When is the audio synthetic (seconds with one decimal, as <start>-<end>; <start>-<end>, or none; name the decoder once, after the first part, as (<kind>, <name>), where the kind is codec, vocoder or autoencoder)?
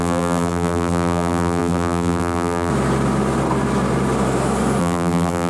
0.0-2.7 (vocoder, BigVGAN v2); 4.8-5.5